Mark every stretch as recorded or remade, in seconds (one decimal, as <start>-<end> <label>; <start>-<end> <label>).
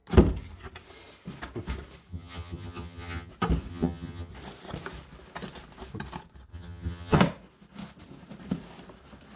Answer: 0.0-2.1 recorded; 2.1-3.3 remade; 3.3-3.7 recorded; 3.7-4.3 remade; 4.3-6.5 recorded; 6.5-7.2 remade; 7.2-9.4 recorded